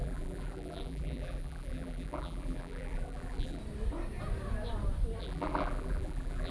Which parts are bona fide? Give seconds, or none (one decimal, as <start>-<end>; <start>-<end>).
3.6-5.2